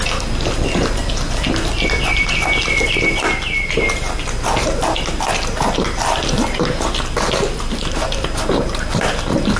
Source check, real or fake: real